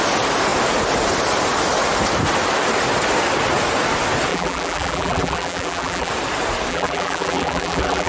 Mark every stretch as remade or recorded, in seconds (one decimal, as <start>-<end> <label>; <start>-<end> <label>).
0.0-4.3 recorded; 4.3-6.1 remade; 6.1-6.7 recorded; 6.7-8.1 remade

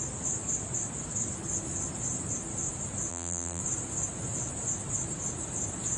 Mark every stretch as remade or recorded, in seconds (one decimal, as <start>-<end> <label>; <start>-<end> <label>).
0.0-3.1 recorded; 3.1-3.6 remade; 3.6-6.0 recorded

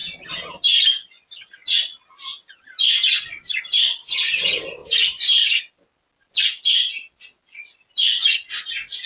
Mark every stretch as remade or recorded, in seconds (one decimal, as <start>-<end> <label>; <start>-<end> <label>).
0.0-4.8 recorded; 4.8-5.6 remade; 5.6-9.1 recorded